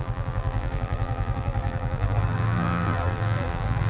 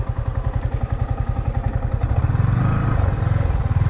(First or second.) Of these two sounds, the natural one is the second